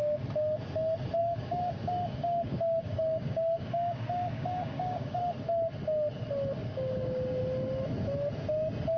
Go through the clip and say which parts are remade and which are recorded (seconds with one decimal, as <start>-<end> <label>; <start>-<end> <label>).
0.0-1.2 recorded; 1.2-5.2 remade; 5.2-6.6 recorded; 6.6-7.4 remade; 7.4-9.0 recorded